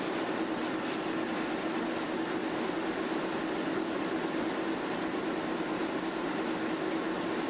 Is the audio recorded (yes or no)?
yes